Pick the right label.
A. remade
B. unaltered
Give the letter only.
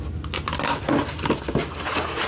B